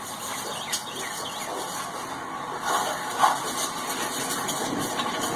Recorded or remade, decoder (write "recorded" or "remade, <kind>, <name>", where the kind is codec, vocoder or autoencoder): recorded